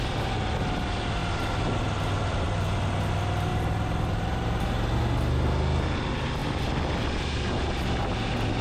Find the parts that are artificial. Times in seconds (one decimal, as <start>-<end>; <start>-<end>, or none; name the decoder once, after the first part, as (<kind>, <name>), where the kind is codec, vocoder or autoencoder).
3.5-4.6 (vocoder, BigVGAN v2)